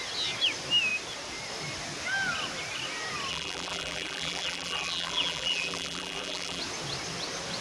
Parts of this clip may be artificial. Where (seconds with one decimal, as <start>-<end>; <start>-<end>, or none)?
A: 3.3-6.6